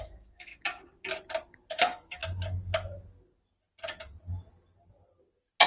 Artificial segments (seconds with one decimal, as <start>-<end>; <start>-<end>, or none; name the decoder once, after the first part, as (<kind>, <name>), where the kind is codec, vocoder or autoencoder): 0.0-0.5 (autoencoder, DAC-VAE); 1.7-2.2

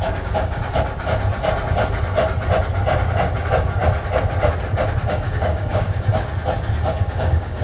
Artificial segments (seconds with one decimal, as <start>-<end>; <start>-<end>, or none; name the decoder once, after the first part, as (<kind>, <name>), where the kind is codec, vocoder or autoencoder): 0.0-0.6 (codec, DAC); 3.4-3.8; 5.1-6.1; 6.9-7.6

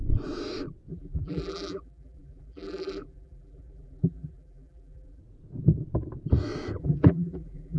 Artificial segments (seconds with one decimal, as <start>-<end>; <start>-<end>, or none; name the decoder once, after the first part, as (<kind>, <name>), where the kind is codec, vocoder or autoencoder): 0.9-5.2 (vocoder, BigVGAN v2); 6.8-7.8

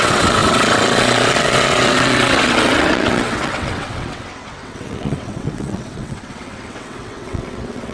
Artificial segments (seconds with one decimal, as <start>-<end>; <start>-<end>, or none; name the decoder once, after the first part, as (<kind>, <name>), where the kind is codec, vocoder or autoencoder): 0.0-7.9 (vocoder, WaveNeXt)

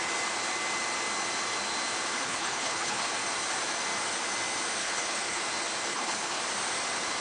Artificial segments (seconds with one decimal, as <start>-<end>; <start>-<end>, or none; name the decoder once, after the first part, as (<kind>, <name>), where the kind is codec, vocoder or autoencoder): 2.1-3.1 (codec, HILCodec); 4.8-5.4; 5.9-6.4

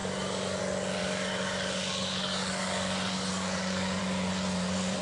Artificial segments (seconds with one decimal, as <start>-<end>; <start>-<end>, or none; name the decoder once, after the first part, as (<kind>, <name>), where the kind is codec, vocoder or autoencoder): 0.0-0.6 (codec, DAC); 1.0-4.0

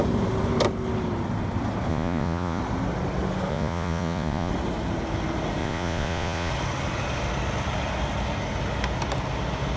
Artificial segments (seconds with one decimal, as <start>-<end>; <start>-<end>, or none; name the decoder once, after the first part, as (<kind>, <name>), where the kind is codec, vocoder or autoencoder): 1.9-2.6 (vocoder, Vocos); 3.5-4.5; 5.6-6.5

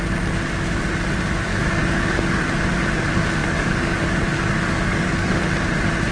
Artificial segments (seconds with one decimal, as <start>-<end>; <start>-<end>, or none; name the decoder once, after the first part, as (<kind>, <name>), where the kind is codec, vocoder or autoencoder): 1.5-2.4 (codec, DAC); 3.4-5.4